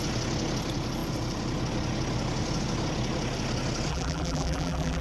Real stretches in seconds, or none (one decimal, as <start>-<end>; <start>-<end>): 0.0-3.9